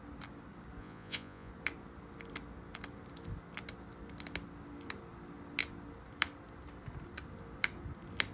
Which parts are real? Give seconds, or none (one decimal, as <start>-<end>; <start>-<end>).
0.0-0.8; 1.5-8.3